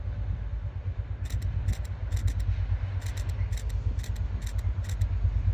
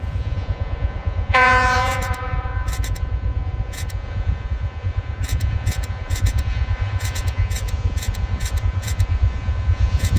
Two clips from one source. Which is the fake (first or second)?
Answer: second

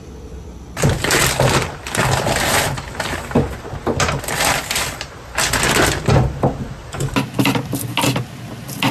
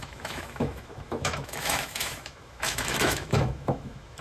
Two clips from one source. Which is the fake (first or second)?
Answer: second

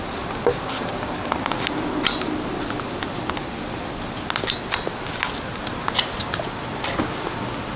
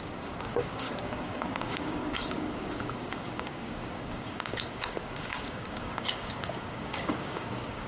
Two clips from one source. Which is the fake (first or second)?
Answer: second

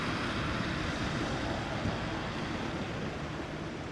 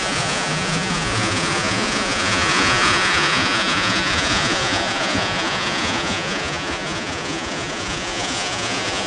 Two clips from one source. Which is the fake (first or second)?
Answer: second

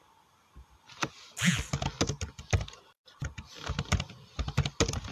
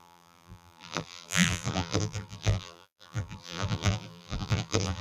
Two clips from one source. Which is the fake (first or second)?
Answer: second